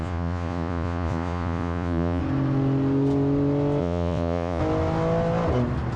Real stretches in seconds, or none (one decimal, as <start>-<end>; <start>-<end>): 2.2-3.8; 4.6-6.0